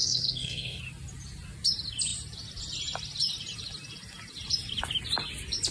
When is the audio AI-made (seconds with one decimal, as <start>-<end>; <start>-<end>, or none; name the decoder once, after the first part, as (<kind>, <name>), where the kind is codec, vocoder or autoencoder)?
0.0-0.8 (codec, SNAC)